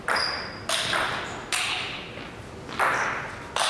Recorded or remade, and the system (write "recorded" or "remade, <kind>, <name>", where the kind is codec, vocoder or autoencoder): recorded